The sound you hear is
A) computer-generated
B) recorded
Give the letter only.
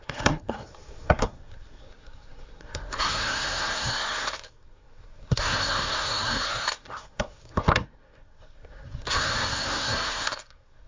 A